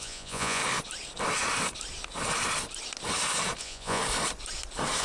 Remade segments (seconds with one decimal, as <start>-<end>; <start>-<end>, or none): 0.0-0.6; 3.6-4.0